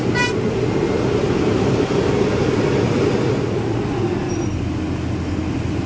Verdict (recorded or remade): recorded